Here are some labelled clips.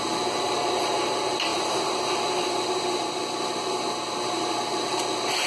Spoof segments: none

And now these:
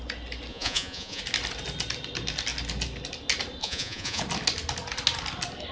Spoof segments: 0.5-1.2 (vocoder, Vocos); 3.6-4.2